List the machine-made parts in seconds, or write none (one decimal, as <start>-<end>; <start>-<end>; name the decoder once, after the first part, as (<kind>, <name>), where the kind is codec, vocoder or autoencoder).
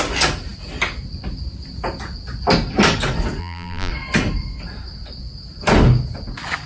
3.4-3.9 (vocoder, BigVGAN v2)